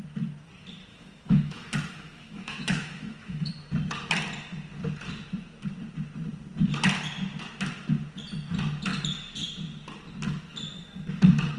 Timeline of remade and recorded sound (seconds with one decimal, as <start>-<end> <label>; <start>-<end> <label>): 0.0-0.9 recorded; 0.9-3.5 remade; 3.5-11.6 recorded